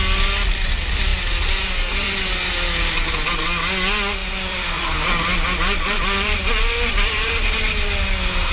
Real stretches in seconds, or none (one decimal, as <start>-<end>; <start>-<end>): 0.0-4.2; 7.3-8.5